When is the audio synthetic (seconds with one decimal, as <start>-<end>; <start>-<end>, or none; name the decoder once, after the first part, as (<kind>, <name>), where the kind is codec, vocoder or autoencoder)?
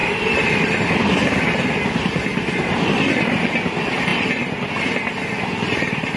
0.0-1.1 (vocoder, BigVGAN v2); 4.1-4.7